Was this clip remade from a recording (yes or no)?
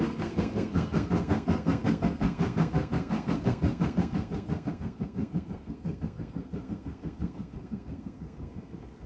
yes